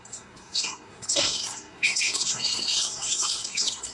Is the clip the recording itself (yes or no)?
no